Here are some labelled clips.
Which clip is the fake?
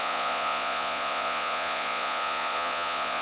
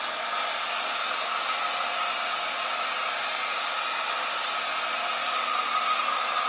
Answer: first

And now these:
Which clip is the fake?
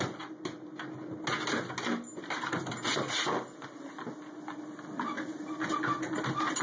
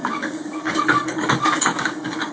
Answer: second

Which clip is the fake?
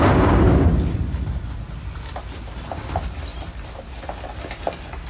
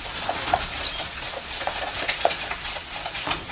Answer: second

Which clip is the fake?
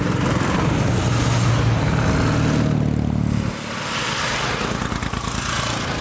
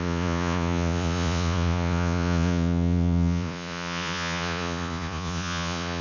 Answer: second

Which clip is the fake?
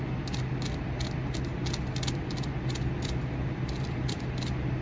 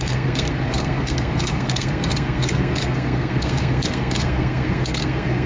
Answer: second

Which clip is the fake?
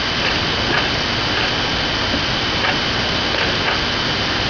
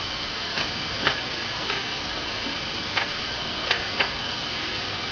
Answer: second